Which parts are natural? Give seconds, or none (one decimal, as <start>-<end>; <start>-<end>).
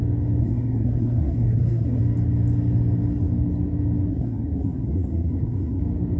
0.0-0.4; 2.0-4.1; 5.8-6.2